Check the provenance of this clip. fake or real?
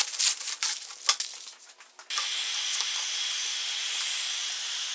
real